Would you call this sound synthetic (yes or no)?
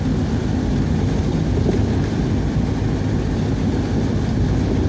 no